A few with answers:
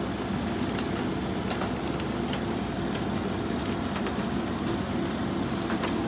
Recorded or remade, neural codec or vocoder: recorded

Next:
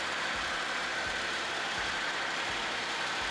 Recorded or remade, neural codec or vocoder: recorded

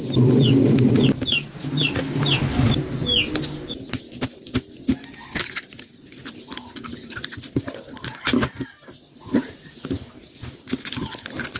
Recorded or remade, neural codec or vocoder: recorded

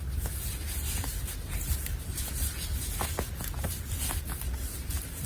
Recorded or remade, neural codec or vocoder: recorded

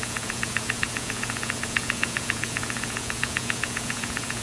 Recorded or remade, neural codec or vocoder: remade, vocoder, Vocos